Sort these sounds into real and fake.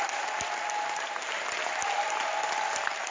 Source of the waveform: real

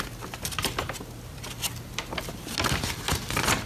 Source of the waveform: real